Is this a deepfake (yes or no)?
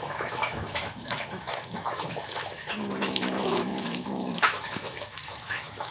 yes